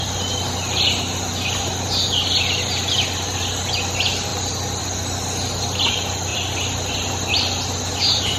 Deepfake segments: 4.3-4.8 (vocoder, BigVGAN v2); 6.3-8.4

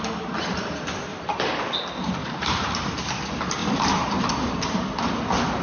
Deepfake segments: 1.1-1.6 (vocoder, BigVGAN v2); 2.2-2.8; 3.6-5.1

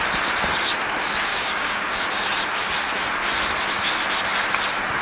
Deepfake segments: 1.3-2.0 (codec, DAC)

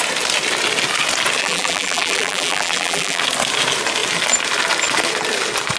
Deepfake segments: 1.4-3.2 (vocoder, BigVGAN v2)